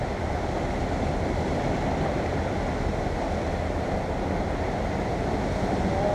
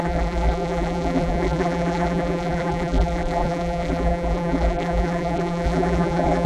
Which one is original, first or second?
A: first